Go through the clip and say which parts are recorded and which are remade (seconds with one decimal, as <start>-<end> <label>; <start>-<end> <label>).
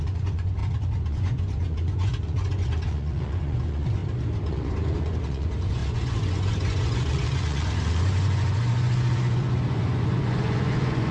0.0-0.6 remade; 0.6-1.1 recorded; 1.1-4.0 remade; 4.0-4.5 recorded; 4.5-11.1 remade